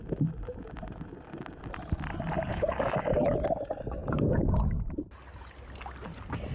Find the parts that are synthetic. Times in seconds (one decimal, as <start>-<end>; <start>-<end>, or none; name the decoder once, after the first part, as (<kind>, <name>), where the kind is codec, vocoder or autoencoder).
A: 2.5-3.1 (codec, DAC); 4.0-4.5